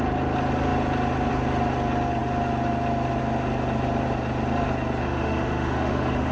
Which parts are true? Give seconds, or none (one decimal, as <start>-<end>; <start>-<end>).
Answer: 0.0-5.0